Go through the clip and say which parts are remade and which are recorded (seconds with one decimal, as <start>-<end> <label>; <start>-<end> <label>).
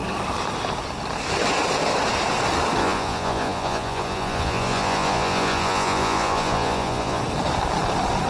0.0-2.8 recorded; 2.8-7.2 remade; 7.2-8.3 recorded